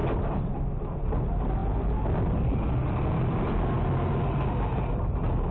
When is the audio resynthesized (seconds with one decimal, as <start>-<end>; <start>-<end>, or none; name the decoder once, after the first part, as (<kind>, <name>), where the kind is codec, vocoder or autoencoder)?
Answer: none